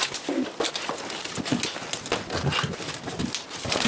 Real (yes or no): yes